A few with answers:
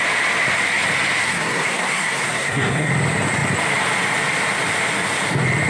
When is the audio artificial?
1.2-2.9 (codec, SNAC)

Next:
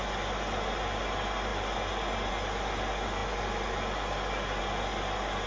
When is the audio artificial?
none

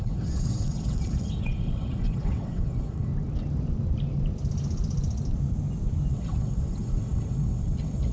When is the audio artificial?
0.0-3.1 (vocoder, WaveNeXt); 6.1-8.1

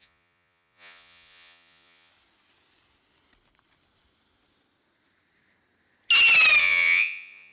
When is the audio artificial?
0.0-2.1 (vocoder, Vocos); 6.6-7.5

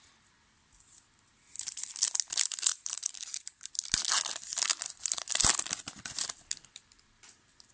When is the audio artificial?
2.7-3.7 (vocoder, BigVGAN v2)

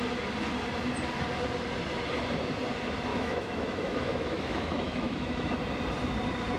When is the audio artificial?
3.1-5.6 (autoencoder, DAC-VAE)

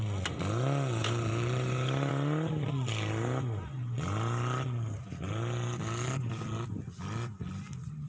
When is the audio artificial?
1.0-2.1 (vocoder, BigVGAN v2)

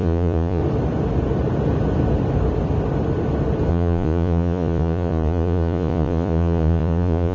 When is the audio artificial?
0.0-0.6 (vocoder, Vocos); 3.7-7.3